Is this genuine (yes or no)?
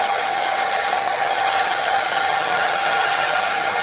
no